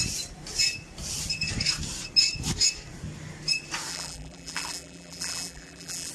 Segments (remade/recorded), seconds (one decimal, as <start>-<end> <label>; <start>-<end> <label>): 0.0-3.9 recorded; 3.9-6.1 remade